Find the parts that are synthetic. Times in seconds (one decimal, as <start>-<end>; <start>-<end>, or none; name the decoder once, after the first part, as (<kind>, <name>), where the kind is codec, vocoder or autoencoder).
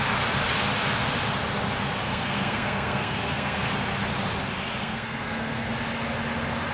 2.0-3.7 (codec, SNAC); 4.8-5.7